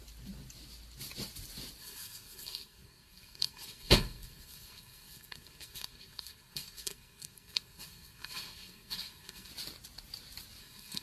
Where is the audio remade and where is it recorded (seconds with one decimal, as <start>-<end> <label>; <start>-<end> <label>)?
0.0-1.8 recorded; 1.8-9.5 remade; 9.5-10.6 recorded; 10.6-11.0 remade